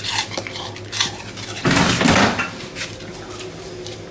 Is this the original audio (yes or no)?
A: yes